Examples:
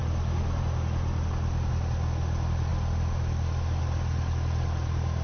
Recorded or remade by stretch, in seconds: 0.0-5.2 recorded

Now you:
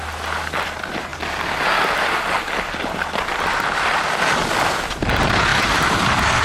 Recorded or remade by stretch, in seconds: 0.0-3.3 recorded; 3.3-4.1 remade; 4.1-5.5 recorded; 5.5-6.4 remade

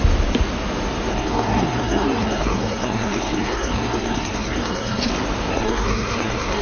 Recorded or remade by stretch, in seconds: 0.0-1.1 recorded; 1.1-5.1 remade; 5.1-5.5 recorded; 5.5-6.6 remade

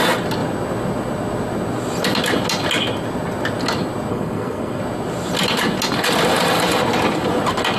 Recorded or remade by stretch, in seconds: 0.0-4.1 recorded; 4.1-4.8 remade; 4.8-7.8 recorded

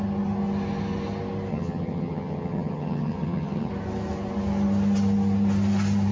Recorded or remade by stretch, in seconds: 0.0-1.5 recorded; 1.5-3.7 remade; 3.7-6.1 recorded

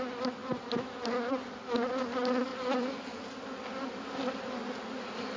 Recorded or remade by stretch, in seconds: 0.0-5.4 recorded

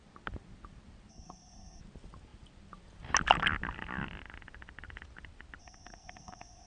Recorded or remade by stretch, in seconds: 0.0-1.1 recorded; 1.1-1.8 remade; 1.8-5.6 recorded; 5.6-6.7 remade

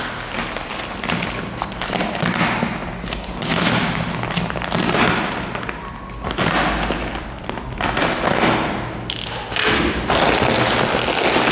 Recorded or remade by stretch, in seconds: 0.0-11.5 recorded